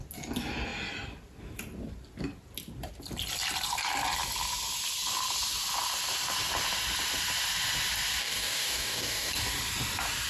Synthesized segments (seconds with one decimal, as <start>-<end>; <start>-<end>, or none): 8.2-9.3